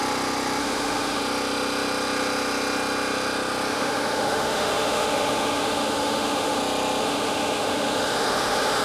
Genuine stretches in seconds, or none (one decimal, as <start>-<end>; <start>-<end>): 0.0-0.6; 1.2-3.7; 6.6-7.0